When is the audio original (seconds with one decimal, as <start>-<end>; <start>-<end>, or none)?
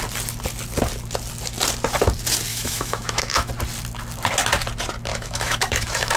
0.0-2.5; 3.5-5.1